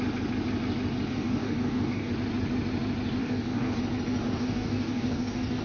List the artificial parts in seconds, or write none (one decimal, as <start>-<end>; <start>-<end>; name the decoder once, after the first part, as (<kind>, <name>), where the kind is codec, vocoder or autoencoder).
1.1-2.1 (codec, DAC); 3.2-3.8; 4.2-5.6

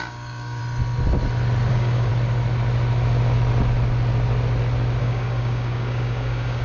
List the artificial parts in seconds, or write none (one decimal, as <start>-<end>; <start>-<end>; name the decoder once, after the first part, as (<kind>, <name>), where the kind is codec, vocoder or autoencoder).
0.0-0.6 (codec, DAC); 1.7-2.1; 5.0-6.6

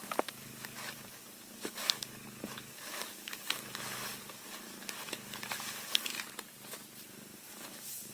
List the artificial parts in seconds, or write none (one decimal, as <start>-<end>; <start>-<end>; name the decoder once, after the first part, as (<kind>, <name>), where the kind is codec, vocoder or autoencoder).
0.0-6.1 (codec, DAC); 7.1-8.1

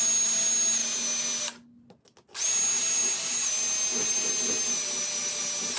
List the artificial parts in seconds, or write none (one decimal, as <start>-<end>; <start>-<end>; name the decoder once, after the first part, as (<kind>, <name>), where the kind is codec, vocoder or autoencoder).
none

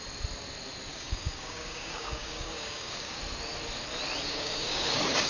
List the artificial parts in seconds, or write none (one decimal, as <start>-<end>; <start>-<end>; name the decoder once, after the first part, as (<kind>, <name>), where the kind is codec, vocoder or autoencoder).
0.9-3.2 (codec, DAC); 4.3-5.3

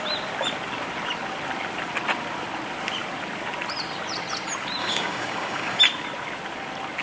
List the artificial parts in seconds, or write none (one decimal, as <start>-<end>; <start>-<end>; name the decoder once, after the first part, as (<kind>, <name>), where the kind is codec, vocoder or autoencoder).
4.8-5.8 (codec, DAC)

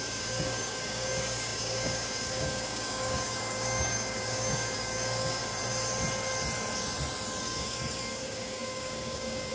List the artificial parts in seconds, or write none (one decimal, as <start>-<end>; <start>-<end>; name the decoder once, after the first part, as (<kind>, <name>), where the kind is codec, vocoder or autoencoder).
0.0-5.4 (codec, DAC); 7.4-9.5